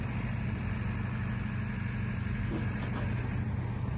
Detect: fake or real real